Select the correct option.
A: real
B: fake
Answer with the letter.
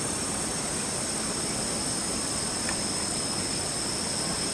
A